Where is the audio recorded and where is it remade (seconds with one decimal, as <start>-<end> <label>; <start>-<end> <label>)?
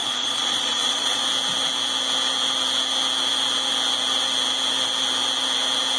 0.0-1.2 remade; 1.2-6.0 recorded